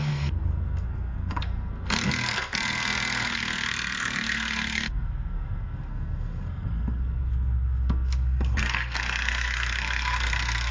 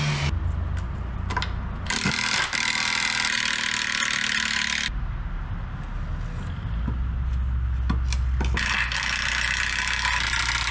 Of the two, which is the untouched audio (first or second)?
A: second